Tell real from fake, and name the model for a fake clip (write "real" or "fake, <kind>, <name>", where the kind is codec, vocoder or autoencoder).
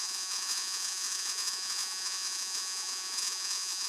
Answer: fake, vocoder, Vocos